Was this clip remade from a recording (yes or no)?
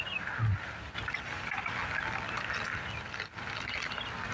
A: no